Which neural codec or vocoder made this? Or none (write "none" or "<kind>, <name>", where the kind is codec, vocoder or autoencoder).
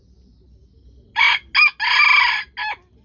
none